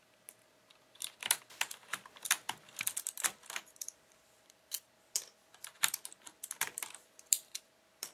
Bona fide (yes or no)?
no